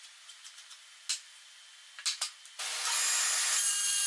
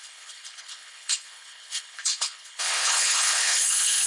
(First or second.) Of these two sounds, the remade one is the second